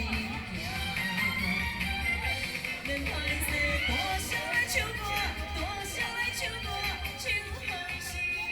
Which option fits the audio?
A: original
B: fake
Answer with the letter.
A